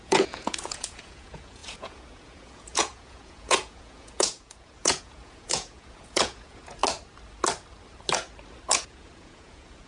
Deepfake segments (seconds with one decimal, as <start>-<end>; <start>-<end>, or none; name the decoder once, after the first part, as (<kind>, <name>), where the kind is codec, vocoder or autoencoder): 0.0-6.8 (vocoder, Vocos); 8.7-9.9